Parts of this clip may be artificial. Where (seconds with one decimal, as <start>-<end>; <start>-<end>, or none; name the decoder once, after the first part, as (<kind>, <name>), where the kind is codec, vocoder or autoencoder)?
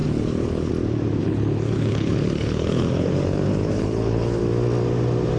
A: 0.0-0.7 (codec, HILCodec); 1.2-4.4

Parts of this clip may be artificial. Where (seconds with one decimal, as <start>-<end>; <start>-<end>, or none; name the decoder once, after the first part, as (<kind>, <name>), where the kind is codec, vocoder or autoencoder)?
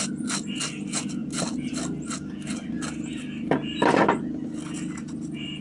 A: none